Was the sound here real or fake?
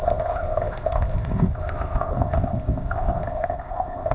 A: fake